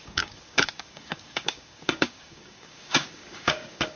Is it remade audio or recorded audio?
remade